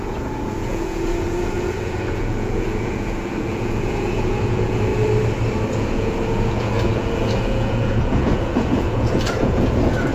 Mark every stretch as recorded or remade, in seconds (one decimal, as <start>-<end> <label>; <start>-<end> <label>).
0.0-4.9 remade; 4.9-5.7 recorded; 5.7-10.1 remade

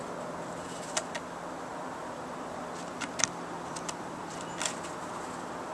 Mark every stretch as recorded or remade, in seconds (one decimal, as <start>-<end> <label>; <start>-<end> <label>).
0.0-1.7 recorded; 1.7-5.1 remade; 5.1-5.7 recorded

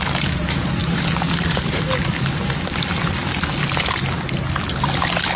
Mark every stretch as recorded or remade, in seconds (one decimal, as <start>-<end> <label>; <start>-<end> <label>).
0.0-5.4 recorded

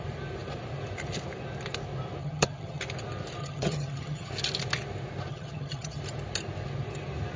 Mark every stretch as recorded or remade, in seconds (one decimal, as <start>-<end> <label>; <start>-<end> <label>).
0.0-2.2 recorded; 2.2-2.8 remade; 2.8-3.4 recorded; 3.4-4.3 remade; 4.3-5.3 recorded; 5.3-6.0 remade; 6.0-7.4 recorded

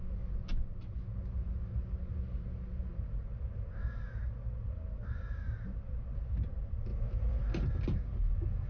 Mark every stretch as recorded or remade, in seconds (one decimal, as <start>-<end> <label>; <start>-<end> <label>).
0.0-8.7 recorded